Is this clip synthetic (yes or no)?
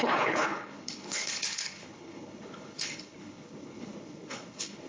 yes